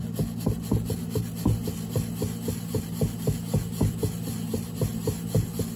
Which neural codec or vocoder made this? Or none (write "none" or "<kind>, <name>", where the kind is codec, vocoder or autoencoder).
none